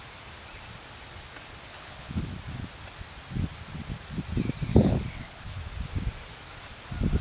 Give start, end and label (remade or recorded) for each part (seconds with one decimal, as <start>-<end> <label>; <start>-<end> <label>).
0.0-1.7 recorded; 1.7-2.2 remade; 2.2-4.7 recorded; 4.7-5.6 remade; 5.6-7.2 recorded